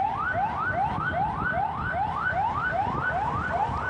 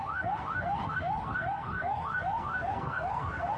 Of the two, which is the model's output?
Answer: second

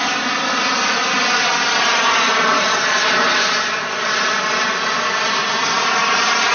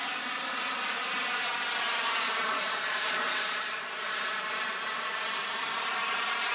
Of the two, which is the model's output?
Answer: second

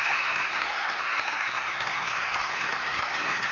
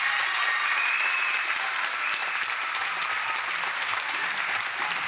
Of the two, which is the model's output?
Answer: first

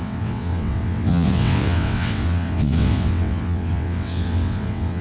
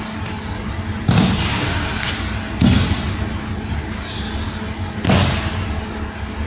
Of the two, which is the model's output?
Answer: first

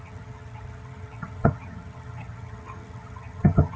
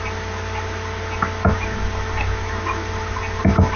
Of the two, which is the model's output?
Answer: first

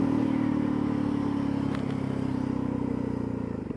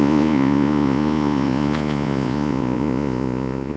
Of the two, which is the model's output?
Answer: second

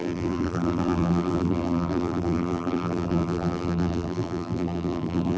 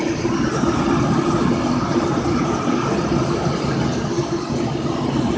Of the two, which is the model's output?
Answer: first